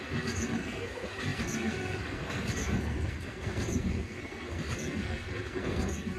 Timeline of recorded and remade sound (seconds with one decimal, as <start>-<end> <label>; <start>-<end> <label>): 0.0-6.2 remade